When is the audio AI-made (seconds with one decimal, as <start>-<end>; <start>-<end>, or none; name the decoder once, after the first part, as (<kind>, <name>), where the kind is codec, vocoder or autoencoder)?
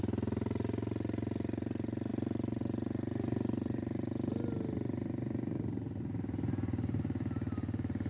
none